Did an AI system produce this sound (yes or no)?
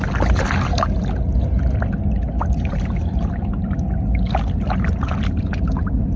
no